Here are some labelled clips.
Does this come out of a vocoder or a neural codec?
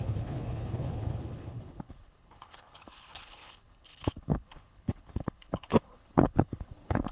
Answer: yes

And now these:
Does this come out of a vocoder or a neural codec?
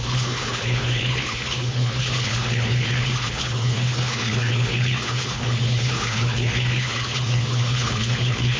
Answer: yes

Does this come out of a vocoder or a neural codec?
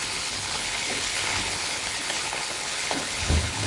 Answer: yes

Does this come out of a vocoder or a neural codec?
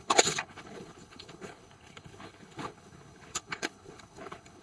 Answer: yes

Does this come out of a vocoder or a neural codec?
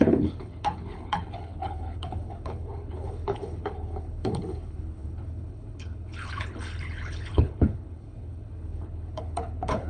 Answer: yes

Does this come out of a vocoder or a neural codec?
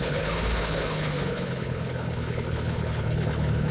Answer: yes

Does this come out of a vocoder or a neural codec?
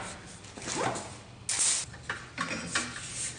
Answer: no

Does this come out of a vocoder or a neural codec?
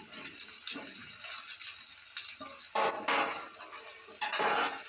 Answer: no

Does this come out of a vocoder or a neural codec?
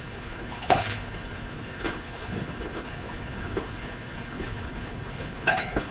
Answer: yes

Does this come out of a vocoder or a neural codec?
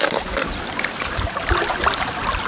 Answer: no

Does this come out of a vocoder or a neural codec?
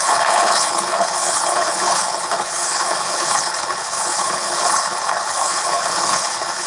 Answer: yes